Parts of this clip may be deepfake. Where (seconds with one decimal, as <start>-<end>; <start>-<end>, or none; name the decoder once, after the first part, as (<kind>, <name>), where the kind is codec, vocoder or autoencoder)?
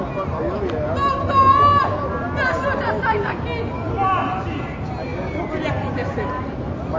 none